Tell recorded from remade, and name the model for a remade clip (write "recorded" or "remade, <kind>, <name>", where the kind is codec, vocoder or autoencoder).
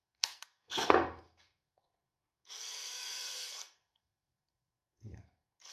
remade, codec, SNAC